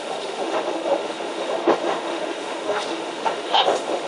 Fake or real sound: fake